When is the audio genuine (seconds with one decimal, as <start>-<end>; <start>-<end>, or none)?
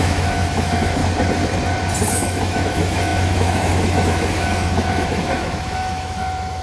1.0-2.1